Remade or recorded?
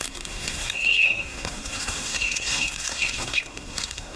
remade